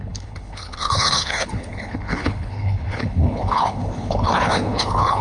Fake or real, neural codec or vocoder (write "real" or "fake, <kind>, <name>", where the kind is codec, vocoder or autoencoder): fake, codec, HILCodec